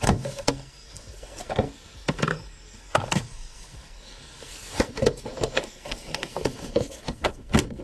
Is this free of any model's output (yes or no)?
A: no